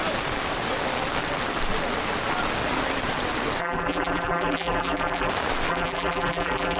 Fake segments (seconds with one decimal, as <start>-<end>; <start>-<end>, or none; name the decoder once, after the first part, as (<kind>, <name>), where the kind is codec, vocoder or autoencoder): 3.6-5.3 (vocoder, BigVGAN v2); 5.7-6.8